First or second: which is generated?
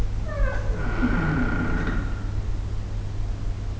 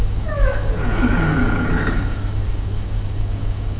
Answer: second